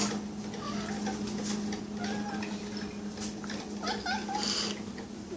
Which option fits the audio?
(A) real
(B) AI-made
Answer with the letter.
A